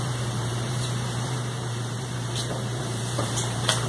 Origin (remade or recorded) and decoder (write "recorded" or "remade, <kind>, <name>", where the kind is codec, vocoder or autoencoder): remade, vocoder, BigVGAN v2